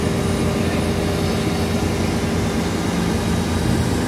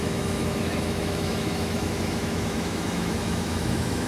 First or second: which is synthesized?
second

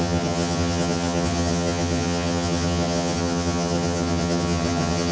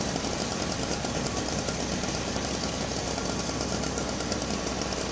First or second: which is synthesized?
first